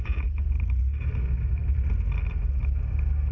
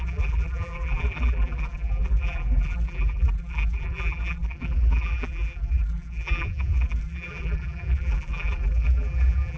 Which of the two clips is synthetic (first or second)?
second